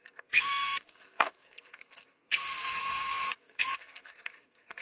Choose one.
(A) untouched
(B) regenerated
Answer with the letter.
B